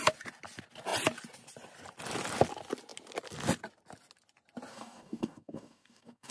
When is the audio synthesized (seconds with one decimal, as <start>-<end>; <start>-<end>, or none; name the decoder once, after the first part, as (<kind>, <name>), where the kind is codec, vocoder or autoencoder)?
4.7-6.3 (codec, DAC)